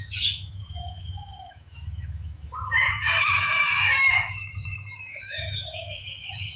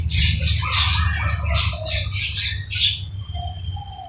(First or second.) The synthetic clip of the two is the first